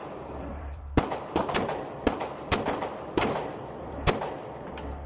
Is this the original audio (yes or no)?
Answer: no